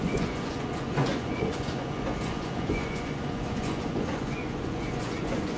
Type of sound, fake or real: fake